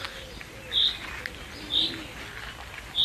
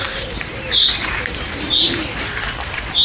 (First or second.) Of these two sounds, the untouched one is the first